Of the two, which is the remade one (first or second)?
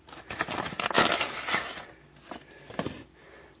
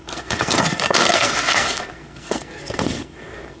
second